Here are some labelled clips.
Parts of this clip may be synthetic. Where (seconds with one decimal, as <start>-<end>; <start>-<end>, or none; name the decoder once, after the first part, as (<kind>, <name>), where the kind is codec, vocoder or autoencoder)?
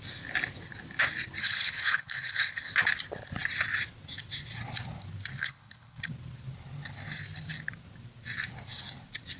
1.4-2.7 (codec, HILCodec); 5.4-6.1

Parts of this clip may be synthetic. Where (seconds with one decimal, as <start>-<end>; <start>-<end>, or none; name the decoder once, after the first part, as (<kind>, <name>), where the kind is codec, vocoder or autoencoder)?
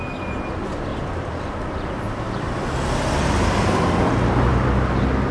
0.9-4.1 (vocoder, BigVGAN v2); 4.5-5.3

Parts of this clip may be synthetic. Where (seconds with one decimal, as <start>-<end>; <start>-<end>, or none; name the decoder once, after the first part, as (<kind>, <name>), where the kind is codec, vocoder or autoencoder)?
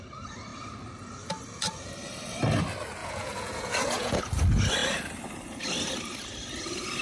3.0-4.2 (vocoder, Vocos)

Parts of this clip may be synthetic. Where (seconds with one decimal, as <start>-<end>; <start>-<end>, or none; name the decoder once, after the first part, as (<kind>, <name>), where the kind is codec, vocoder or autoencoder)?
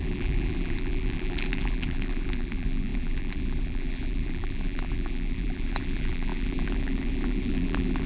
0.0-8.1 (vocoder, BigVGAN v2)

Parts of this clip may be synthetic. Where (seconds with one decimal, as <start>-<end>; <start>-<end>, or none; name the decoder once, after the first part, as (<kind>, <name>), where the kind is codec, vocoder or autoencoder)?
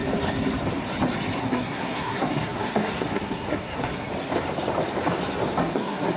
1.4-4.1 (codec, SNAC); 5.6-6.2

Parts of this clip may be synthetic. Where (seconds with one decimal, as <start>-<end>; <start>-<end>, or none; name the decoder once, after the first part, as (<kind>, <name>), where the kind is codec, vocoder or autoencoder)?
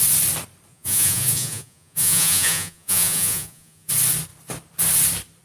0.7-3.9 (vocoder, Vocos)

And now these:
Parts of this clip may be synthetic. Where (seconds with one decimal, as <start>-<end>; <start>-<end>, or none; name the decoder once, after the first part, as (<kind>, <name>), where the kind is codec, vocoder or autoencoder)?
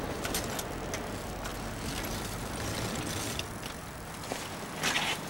none